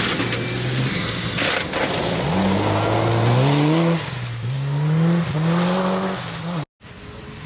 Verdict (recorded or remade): recorded